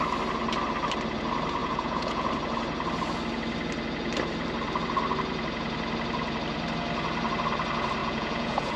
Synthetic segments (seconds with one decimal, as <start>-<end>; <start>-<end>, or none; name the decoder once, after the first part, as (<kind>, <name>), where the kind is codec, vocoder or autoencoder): 1.6-2.3 (vocoder, Vocos); 8.0-8.8